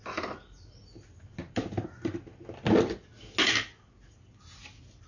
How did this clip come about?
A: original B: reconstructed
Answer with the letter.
A